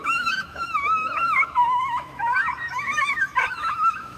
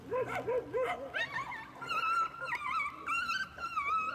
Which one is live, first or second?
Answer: second